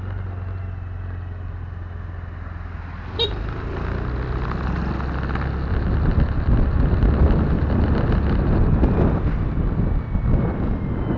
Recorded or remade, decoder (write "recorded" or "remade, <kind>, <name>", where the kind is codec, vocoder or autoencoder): recorded